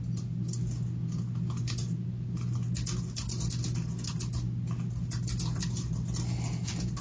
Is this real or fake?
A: real